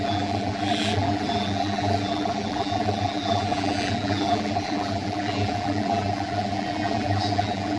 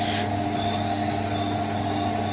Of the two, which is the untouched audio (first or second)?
second